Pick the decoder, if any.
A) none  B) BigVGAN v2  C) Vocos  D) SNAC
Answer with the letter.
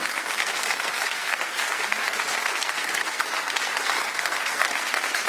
D